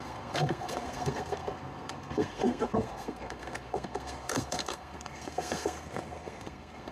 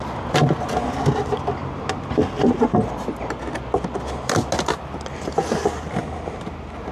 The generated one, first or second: first